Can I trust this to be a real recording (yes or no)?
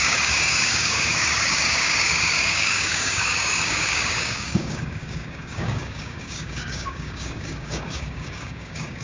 no